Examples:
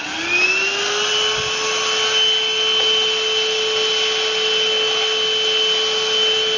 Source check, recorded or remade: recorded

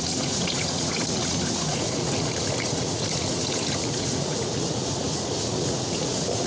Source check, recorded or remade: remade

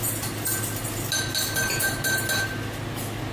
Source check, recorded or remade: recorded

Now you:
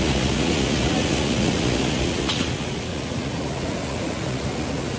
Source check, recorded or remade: remade